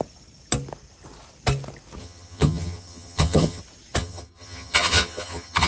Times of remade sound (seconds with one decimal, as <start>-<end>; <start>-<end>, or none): 2.0-3.6; 4.0-5.7